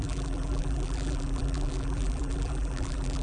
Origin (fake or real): fake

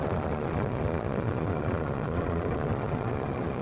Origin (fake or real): fake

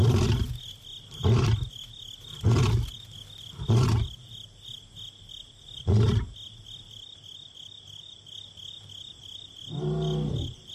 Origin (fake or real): real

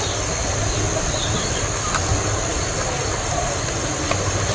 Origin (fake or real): real